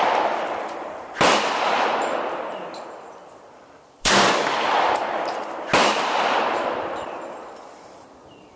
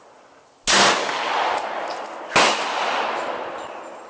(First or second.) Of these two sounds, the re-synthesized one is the first